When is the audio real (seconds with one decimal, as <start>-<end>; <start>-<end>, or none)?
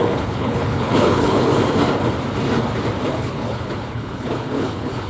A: 1.5-3.1